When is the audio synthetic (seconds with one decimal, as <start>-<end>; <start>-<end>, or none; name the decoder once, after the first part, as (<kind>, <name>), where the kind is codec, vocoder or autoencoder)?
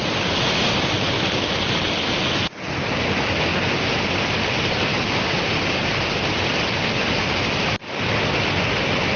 3.5-4.4 (vocoder, BigVGAN v2); 4.9-5.6